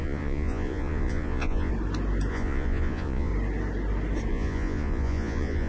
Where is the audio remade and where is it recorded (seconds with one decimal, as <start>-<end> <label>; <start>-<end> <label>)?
0.0-1.7 remade; 1.7-2.3 recorded; 2.3-3.3 remade; 3.3-4.3 recorded; 4.3-5.7 remade